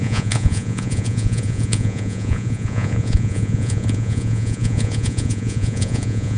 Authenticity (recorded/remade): remade